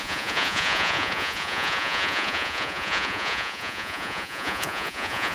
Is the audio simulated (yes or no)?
yes